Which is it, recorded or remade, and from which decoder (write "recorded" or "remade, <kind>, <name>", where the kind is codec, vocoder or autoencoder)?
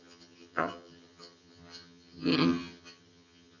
remade, vocoder, HiFi-GAN